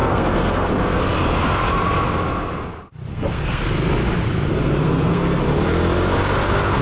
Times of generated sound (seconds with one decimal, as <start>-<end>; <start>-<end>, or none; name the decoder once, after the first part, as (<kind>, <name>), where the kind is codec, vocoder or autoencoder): 0.0-1.0 (codec, SNAC); 3.1-3.6; 4.5-5.4